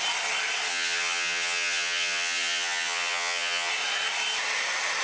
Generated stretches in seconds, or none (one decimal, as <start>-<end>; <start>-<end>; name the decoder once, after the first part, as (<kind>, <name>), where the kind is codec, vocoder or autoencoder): 0.7-3.7 (vocoder, HiFi-GAN)